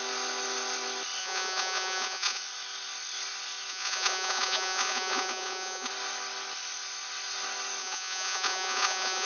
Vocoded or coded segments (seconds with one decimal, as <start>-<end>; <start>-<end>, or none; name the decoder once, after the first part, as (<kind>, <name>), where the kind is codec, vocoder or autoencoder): 1.2-2.4 (vocoder, Vocos); 3.7-5.9; 7.8-9.3